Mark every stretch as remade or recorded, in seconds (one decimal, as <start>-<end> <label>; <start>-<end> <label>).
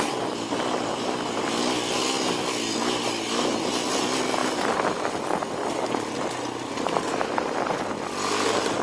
0.0-8.8 recorded